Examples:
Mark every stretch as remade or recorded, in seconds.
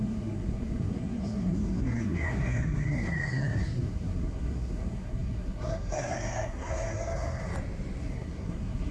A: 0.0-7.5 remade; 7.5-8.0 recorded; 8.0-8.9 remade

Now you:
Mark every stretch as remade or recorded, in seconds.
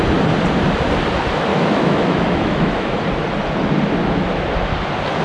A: 0.0-1.5 recorded; 1.5-3.0 remade; 3.0-5.2 recorded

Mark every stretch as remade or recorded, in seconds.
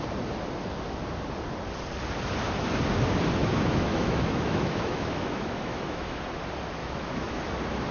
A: 0.0-3.4 recorded; 3.4-6.2 remade; 6.2-6.8 recorded; 6.8-7.4 remade; 7.4-7.9 recorded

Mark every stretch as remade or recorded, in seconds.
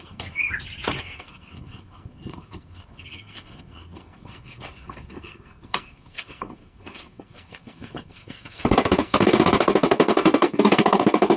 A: 0.0-0.5 remade; 0.5-1.0 recorded; 1.0-11.4 remade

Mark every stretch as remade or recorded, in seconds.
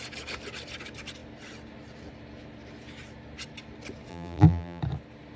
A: 0.0-4.1 recorded; 4.1-4.8 remade; 4.8-5.4 recorded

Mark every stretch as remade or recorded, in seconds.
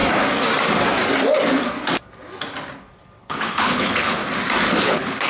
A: 0.0-3.2 recorded; 3.2-4.2 remade; 4.2-4.8 recorded; 4.8-5.3 remade